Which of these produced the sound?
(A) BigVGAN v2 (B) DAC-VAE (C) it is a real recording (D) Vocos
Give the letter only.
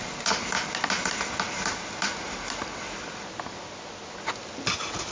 C